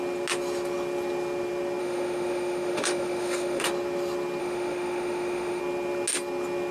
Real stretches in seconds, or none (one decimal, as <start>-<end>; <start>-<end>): 0.0-1.8; 3.7-4.4; 5.6-6.7